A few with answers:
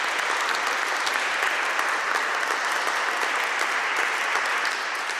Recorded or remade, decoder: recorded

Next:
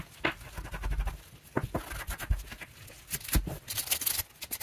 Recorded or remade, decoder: recorded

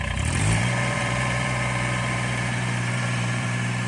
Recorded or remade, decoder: remade, vocoder, BigVGAN v2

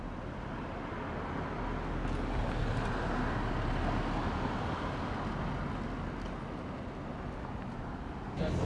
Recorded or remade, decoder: recorded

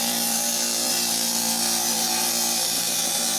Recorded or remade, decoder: remade, vocoder, BigVGAN v2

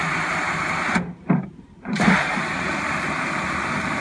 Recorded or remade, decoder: remade, vocoder, BigVGAN v2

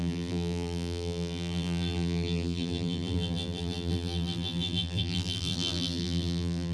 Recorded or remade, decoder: remade, vocoder, BigVGAN v2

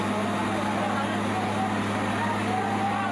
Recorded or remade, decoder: recorded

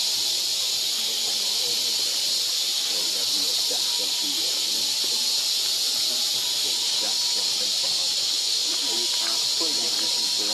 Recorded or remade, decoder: recorded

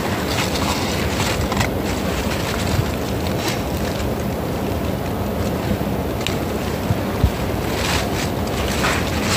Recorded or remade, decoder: recorded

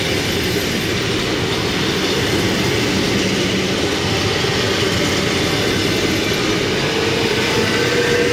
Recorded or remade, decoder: recorded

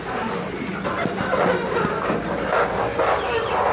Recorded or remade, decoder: recorded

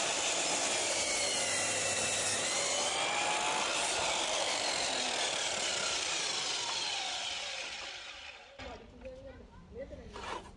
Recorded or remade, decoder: remade, vocoder, BigVGAN v2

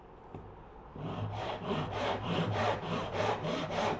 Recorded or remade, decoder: remade, vocoder, BigVGAN v2